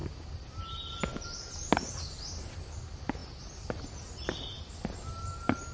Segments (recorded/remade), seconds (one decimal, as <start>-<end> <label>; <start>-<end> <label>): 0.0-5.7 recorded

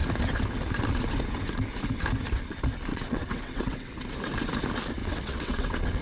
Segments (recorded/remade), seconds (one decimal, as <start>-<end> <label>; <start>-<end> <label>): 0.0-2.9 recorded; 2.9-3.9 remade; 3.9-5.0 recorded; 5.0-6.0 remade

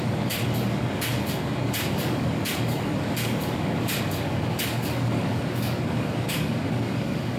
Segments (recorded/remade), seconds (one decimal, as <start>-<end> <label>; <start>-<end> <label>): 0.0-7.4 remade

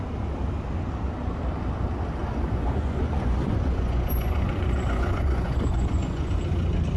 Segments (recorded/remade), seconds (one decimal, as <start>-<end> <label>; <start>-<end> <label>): 0.0-2.2 recorded; 2.2-6.4 remade; 6.4-7.0 recorded

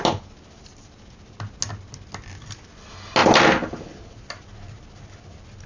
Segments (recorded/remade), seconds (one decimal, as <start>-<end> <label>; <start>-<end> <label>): 0.0-5.7 recorded

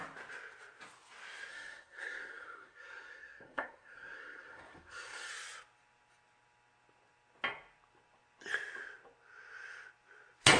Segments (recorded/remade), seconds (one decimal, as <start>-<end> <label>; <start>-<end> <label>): 0.0-1.5 recorded; 1.5-5.3 remade; 5.3-10.6 recorded

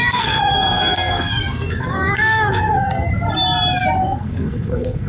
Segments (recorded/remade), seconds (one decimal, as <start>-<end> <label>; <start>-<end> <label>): 0.0-3.1 remade; 3.1-4.0 recorded; 4.0-5.1 remade

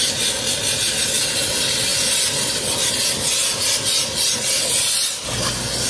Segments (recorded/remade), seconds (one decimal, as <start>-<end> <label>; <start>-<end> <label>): 0.0-5.9 recorded